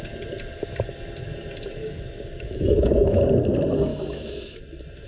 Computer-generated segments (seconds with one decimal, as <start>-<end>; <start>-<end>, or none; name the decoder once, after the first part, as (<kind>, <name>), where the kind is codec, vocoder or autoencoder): 1.8-3.2 (autoencoder, DAC-VAE); 3.9-4.6